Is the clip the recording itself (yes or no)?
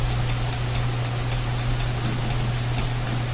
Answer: yes